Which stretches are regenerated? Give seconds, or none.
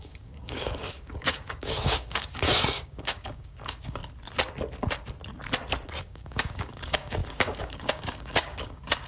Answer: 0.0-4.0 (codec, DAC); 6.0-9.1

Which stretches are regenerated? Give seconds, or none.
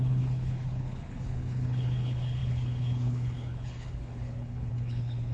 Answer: 0.0-5.3 (codec, HILCodec)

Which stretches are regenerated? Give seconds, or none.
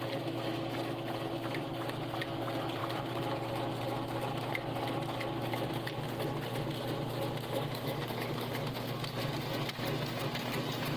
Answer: none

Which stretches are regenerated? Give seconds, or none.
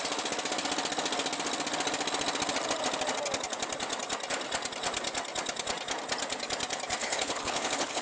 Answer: 7.0-8.0 (codec, HILCodec)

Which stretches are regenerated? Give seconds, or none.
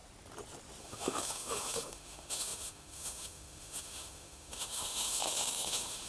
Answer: 0.8-6.1 (autoencoder, DAC-VAE)